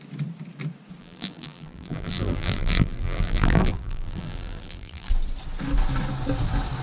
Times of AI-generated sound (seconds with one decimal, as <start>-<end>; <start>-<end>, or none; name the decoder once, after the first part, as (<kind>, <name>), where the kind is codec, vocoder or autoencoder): 1.0-5.1 (vocoder, BigVGAN v2)